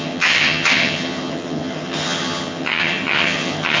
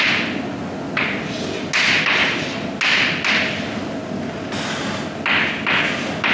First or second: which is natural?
second